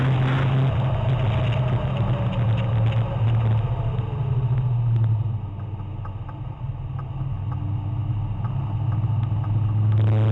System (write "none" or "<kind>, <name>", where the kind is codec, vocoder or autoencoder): none